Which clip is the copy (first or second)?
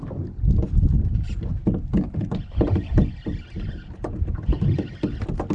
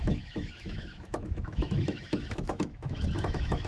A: second